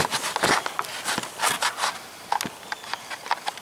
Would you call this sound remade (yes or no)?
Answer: no